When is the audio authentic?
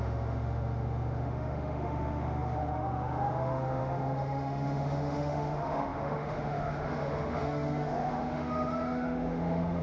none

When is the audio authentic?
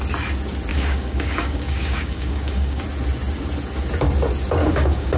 0.0-0.7; 2.8-4.6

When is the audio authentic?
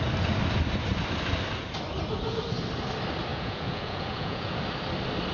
0.0-3.3; 4.6-5.3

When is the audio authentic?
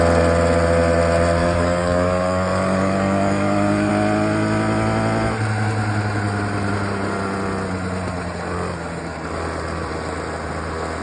0.0-1.4; 3.9-11.0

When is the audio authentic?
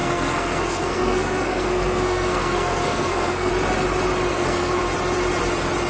3.5-4.3; 4.8-5.9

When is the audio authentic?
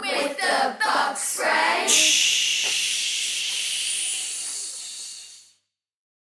2.1-4.1; 4.8-6.3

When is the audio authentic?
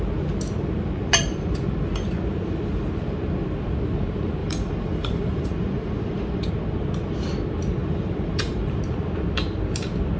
0.0-4.4; 6.5-7.8; 8.8-10.2